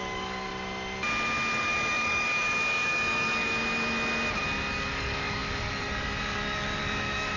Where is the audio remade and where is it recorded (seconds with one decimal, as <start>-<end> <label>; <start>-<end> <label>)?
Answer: 0.0-0.5 remade; 0.5-1.6 recorded; 1.6-3.5 remade; 3.5-4.7 recorded; 4.7-7.4 remade

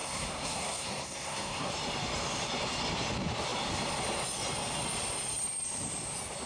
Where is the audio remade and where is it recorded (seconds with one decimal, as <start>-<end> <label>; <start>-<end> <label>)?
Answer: 0.0-1.7 remade; 1.7-6.5 recorded

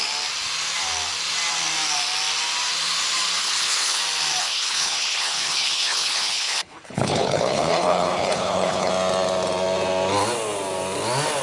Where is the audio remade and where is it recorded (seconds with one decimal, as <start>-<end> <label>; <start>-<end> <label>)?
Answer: 0.0-3.4 recorded; 3.4-4.0 remade; 4.0-4.4 recorded; 4.4-8.9 remade; 8.9-11.4 recorded

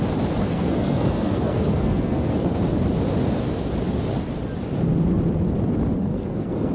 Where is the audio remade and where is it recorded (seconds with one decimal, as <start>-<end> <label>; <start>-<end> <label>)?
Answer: 0.0-0.4 recorded; 0.4-2.6 remade; 2.6-6.0 recorded; 6.0-6.7 remade

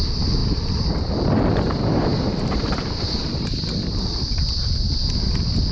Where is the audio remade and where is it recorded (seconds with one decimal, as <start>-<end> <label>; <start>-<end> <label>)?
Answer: 0.0-5.7 recorded